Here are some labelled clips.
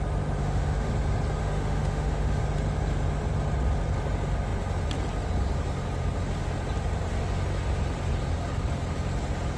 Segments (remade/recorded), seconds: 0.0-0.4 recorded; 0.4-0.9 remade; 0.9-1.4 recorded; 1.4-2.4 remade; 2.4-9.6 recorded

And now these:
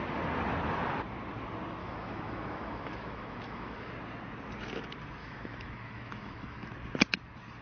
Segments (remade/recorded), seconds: 0.0-1.8 recorded; 1.8-3.9 remade; 3.9-5.2 recorded; 5.2-6.7 remade; 6.7-7.6 recorded

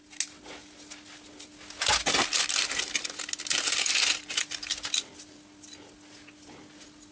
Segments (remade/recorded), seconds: 0.0-7.1 recorded

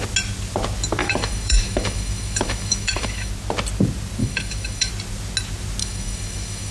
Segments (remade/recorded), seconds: 0.0-1.0 recorded; 1.0-3.3 remade; 3.3-4.2 recorded; 4.2-4.9 remade; 4.9-5.8 recorded; 5.8-6.7 remade

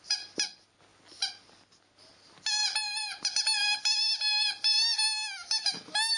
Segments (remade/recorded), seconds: 0.0-4.8 recorded; 4.8-6.2 remade